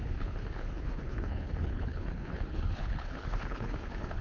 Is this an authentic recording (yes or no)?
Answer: no